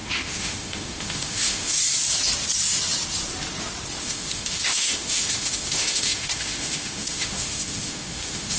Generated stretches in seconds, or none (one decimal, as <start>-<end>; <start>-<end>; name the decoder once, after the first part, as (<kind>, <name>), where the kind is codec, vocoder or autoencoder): 0.0-1.8 (autoencoder, DAC-VAE); 4.0-8.6